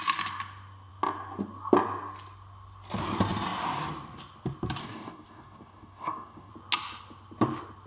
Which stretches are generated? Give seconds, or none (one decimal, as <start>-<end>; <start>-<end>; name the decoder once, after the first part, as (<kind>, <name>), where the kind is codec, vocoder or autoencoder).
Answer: 4.8-6.5 (codec, DAC)